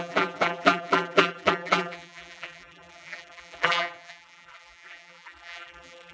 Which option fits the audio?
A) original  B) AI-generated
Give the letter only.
B